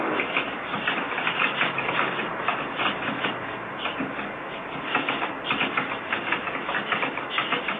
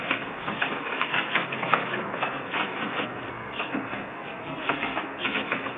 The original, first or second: first